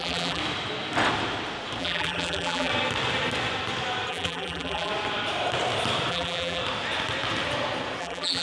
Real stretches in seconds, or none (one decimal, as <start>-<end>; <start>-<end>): 0.4-1.8; 2.7-4.1; 4.9-6.1; 6.6-8.0